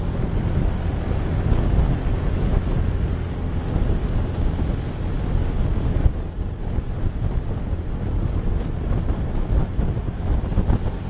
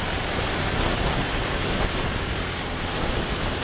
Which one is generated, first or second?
second